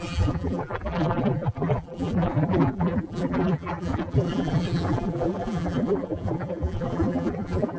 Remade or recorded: remade